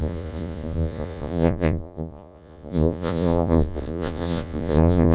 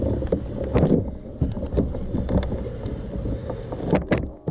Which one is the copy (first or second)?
first